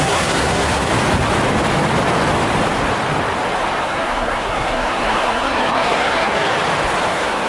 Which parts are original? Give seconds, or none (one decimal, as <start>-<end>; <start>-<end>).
0.9-3.8; 6.5-7.1